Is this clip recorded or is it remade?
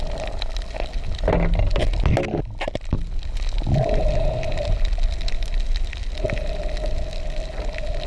recorded